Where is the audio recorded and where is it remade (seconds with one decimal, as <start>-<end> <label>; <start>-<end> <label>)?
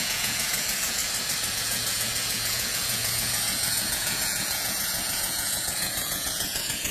0.0-1.0 remade; 1.0-1.5 recorded; 1.5-6.9 remade